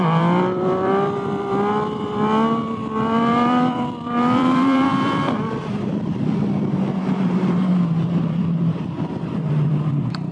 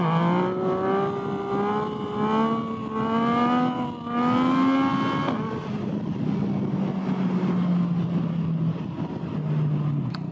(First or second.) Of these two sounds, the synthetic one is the first